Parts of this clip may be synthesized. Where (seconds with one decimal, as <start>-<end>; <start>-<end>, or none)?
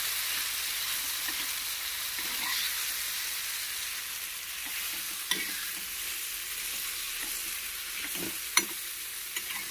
7.4-9.7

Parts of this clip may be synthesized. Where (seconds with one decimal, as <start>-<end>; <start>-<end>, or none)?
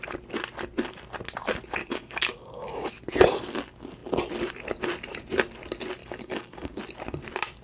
1.8-2.9; 6.0-6.8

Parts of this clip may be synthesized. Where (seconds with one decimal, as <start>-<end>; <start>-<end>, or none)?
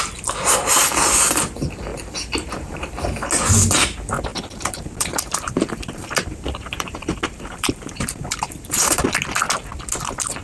1.9-2.9; 4.3-9.0